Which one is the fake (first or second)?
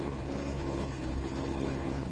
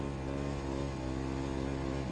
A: first